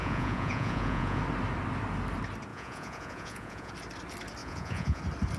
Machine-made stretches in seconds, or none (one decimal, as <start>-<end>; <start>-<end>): 0.0-1.2; 2.5-3.7; 4.4-5.0